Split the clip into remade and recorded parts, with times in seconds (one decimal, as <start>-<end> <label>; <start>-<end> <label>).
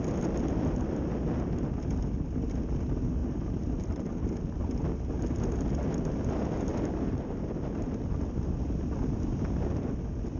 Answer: 0.0-3.2 recorded; 3.2-4.4 remade; 4.4-10.4 recorded